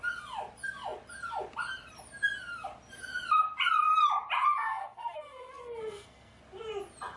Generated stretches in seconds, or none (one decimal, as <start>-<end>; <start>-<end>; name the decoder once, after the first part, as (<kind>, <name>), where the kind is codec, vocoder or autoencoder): 4.6-6.4 (codec, SNAC)